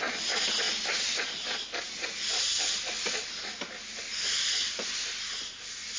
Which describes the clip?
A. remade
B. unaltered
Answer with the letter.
B